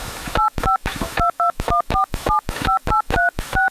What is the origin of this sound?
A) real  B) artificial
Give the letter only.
B